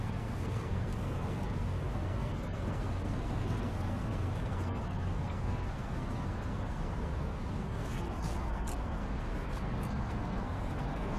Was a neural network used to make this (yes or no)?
yes